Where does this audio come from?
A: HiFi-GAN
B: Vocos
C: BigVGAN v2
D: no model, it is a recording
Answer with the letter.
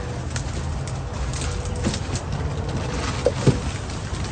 D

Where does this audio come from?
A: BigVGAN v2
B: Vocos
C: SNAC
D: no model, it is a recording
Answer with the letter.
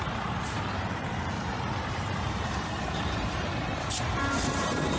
A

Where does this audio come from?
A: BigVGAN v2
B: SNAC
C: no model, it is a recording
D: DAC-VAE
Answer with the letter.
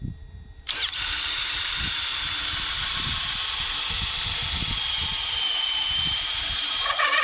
A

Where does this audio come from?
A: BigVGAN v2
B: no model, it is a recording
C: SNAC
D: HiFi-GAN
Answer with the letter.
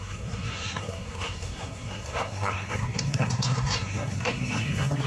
C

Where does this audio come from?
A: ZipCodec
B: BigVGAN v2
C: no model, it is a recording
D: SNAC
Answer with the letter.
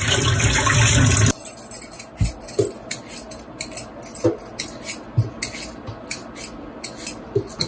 C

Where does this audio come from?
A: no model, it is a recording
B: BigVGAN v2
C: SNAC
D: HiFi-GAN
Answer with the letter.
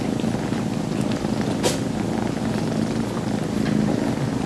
A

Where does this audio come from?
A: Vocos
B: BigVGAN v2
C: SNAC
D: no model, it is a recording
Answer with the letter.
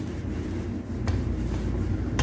D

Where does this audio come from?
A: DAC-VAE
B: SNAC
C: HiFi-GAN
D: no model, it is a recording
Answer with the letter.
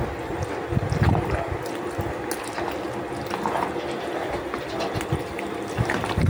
D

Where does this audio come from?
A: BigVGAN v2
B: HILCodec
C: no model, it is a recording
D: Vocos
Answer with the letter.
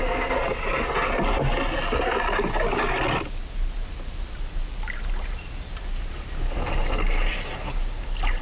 C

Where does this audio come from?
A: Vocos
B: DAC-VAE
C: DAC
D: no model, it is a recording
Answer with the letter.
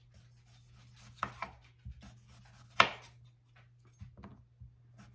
D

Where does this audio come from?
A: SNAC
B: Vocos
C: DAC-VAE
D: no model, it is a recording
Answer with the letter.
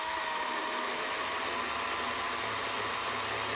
D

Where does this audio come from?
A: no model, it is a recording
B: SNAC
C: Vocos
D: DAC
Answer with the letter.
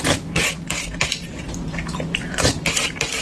A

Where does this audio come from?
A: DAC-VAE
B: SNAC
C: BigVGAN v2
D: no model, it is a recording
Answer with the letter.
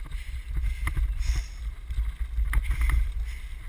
D